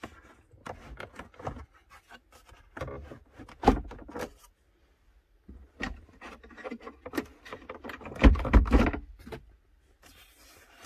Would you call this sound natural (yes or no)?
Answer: yes